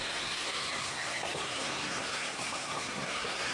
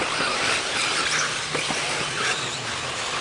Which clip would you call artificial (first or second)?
first